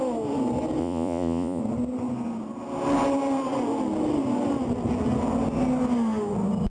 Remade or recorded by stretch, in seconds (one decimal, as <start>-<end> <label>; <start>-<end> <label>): 0.0-0.8 recorded; 0.8-1.6 remade; 1.6-6.7 recorded